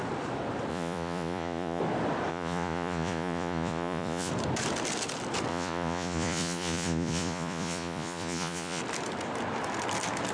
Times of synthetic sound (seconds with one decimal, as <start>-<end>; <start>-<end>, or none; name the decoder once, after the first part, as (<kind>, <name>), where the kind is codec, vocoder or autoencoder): 0.7-1.8 (vocoder, Vocos); 2.3-4.3; 5.5-8.8